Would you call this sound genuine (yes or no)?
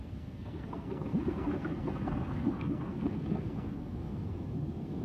no